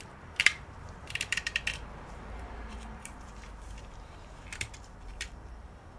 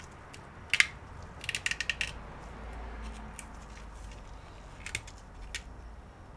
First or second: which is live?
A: second